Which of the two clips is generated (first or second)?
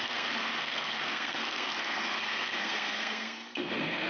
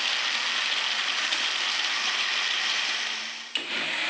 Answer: first